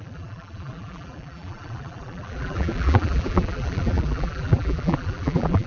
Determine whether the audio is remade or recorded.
remade